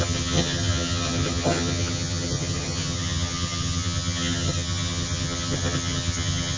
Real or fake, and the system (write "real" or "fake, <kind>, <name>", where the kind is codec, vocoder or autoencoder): fake, vocoder, HiFi-GAN